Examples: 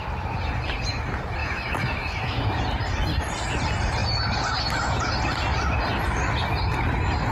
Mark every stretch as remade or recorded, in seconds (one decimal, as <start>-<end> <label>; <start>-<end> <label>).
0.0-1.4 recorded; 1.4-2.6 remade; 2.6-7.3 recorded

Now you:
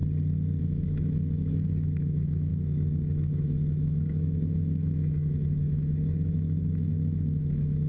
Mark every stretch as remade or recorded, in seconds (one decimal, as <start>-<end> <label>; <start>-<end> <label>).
0.0-0.6 recorded; 0.6-7.9 remade

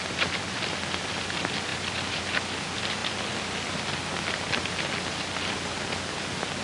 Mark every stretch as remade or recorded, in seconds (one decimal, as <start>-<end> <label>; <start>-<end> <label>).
0.0-6.6 recorded

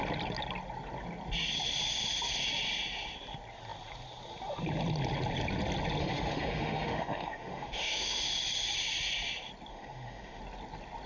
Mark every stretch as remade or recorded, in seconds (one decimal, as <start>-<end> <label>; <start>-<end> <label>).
0.0-6.0 recorded; 6.0-8.2 remade; 8.2-9.7 recorded; 9.7-10.4 remade; 10.4-11.1 recorded